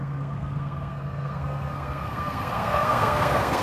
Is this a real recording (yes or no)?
no